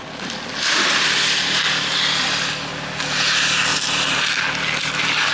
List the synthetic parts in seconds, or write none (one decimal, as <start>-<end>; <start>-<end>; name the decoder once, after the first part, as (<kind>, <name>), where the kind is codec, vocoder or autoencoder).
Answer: none